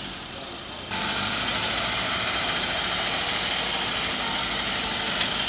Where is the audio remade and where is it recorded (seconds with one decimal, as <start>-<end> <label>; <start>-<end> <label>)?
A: 0.0-5.5 recorded